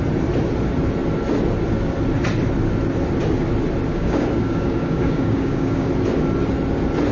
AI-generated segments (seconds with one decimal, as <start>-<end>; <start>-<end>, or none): 3.9-5.9